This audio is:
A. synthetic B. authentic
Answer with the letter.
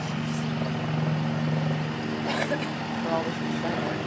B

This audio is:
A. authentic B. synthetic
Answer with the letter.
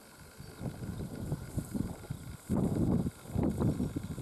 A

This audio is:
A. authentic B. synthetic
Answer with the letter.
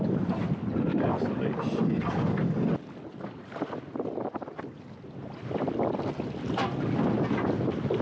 A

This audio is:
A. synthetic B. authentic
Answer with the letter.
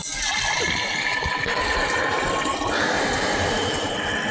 B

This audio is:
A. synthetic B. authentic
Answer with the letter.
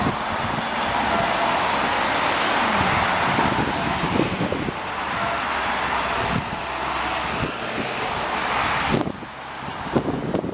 B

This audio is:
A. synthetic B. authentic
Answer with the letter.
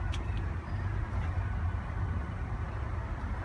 A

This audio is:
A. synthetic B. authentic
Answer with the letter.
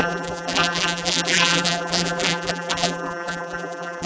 A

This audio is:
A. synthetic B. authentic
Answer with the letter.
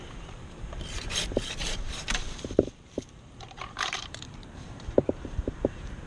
A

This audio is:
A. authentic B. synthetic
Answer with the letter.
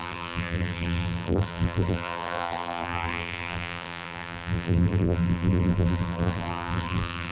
B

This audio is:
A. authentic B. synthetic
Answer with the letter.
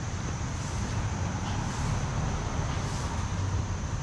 B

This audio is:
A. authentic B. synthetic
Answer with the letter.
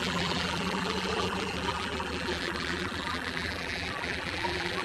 B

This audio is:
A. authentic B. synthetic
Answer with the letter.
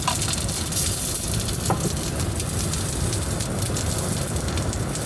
A